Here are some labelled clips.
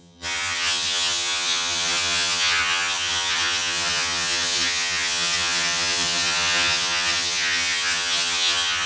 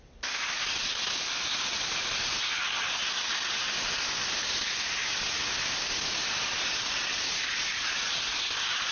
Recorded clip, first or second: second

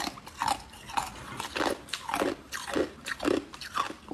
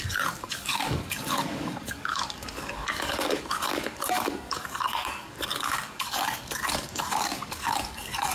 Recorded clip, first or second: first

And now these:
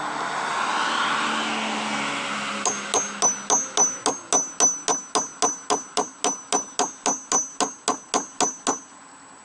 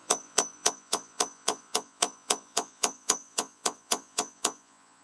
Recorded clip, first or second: first